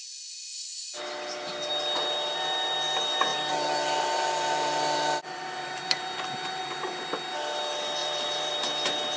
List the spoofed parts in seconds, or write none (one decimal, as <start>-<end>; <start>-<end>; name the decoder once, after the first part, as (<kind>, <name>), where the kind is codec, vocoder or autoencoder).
3.3-6.6 (vocoder, BigVGAN v2); 8.0-8.5